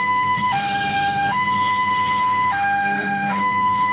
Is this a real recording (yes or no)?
no